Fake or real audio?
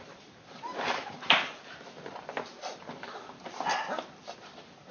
real